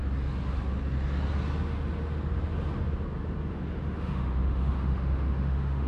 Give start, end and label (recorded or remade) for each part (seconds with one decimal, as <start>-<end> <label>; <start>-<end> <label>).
0.0-3.5 recorded; 3.5-5.9 remade